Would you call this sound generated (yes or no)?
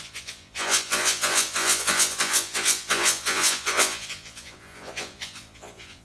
yes